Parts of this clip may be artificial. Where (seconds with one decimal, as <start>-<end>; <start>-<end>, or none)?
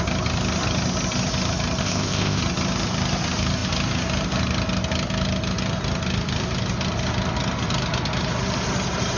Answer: 1.8-2.4